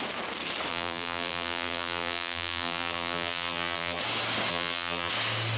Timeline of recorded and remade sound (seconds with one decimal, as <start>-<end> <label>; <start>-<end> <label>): 0.0-0.7 recorded; 0.7-4.0 remade; 4.0-4.5 recorded; 4.5-5.1 remade; 5.1-5.6 recorded

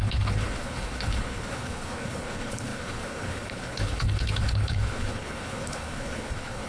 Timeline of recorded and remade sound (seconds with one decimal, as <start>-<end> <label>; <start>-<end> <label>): 0.0-6.7 remade